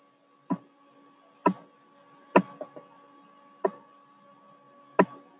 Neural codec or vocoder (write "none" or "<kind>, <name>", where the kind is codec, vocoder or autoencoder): none